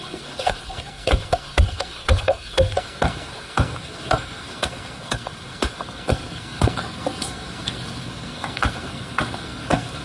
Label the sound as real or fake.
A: fake